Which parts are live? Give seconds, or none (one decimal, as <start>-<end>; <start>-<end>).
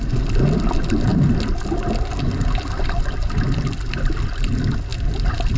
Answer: 0.0-5.6